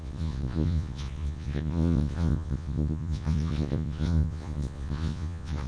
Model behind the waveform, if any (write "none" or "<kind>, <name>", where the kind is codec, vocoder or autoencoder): vocoder, Vocos